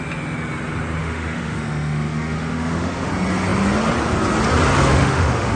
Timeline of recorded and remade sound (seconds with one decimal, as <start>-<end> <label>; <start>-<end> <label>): 0.0-1.0 recorded; 1.0-3.1 remade; 3.1-4.9 recorded; 4.9-5.6 remade